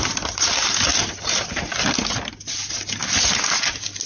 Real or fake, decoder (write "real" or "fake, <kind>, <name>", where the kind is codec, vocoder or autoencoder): real